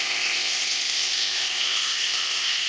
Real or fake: fake